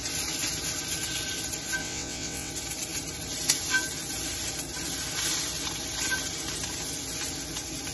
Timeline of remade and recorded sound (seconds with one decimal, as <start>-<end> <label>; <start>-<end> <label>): 0.0-1.8 recorded; 1.8-2.5 remade; 2.5-7.9 recorded